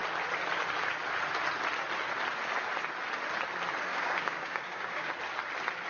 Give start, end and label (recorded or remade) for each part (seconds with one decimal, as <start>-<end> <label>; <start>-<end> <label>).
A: 0.0-3.9 recorded; 3.9-5.1 remade; 5.1-5.9 recorded